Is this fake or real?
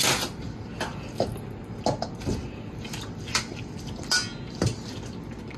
real